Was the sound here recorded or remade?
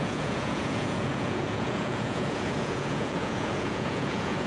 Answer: remade